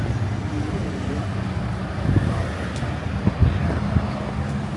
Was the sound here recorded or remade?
recorded